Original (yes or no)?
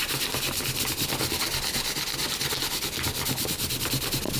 yes